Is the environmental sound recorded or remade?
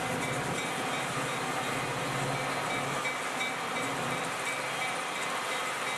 recorded